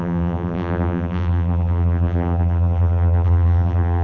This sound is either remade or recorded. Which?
remade